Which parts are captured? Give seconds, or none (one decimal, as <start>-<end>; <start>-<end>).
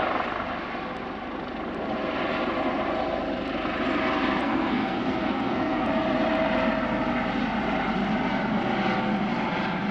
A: 0.0-4.4; 5.9-9.9